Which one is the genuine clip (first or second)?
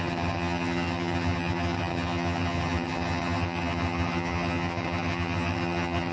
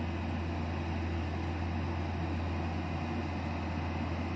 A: second